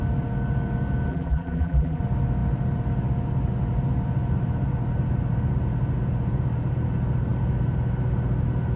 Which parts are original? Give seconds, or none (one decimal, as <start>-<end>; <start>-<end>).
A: 0.0-1.1; 2.0-8.8